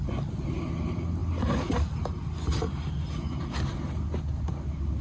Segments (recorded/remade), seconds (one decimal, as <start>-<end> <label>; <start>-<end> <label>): 0.0-5.0 recorded